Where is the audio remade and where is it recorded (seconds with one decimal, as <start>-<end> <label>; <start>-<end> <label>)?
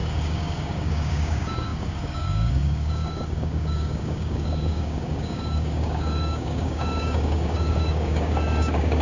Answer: 0.0-9.0 remade